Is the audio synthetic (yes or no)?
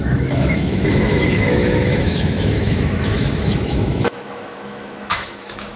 yes